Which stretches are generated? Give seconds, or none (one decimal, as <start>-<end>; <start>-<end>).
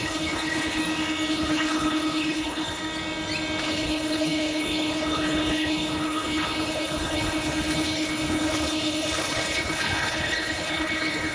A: 0.0-0.8; 1.3-2.8; 3.6-11.3